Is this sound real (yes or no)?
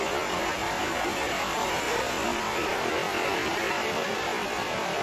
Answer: no